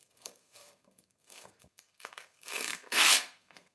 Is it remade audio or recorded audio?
remade